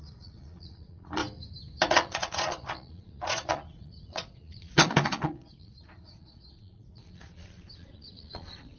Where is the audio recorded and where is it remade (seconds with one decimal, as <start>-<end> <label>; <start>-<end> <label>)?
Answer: 0.0-1.2 remade; 1.2-1.9 recorded; 1.9-8.8 remade